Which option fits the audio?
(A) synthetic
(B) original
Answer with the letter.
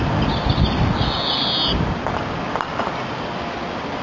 B